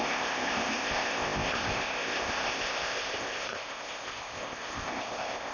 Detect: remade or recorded remade